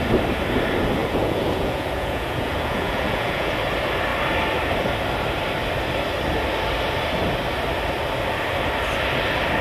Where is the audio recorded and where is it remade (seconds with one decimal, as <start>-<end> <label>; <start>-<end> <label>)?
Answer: 0.0-1.0 recorded; 1.0-3.5 remade; 3.5-9.6 recorded